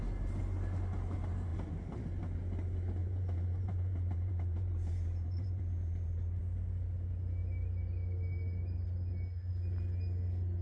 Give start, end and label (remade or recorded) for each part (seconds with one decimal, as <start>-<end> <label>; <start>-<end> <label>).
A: 0.0-3.0 recorded; 3.0-6.4 remade; 6.4-10.6 recorded